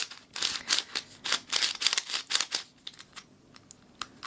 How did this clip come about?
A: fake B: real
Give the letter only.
B